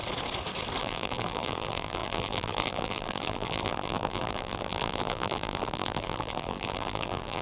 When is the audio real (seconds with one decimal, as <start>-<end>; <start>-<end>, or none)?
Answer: 0.0-0.8